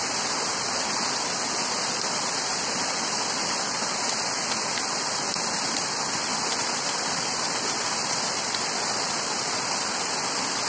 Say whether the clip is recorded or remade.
recorded